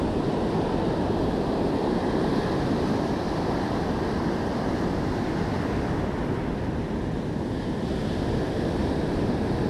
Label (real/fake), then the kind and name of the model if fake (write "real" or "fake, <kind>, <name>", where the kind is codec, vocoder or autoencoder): real